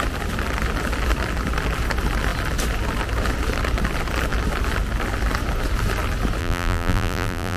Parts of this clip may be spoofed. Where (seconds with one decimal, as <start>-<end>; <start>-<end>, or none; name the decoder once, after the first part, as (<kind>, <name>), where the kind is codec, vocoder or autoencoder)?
6.4-7.6 (vocoder, BigVGAN v2)